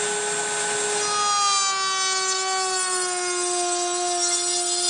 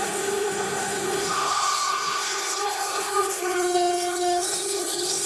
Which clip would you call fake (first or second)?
second